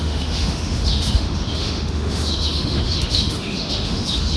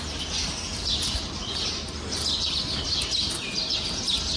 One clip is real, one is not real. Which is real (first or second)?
second